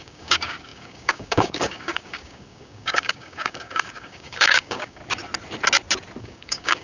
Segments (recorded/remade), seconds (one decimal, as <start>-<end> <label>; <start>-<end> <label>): 0.0-5.0 remade; 5.0-6.2 recorded; 6.2-6.8 remade